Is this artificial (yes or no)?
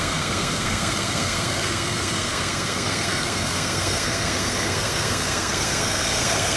yes